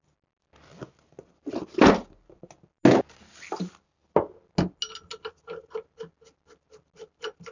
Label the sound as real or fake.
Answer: real